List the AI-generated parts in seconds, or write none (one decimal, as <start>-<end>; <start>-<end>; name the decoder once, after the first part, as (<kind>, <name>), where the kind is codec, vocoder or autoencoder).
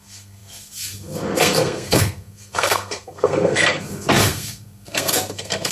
0.0-5.7 (codec, SNAC)